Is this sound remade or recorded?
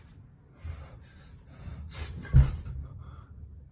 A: recorded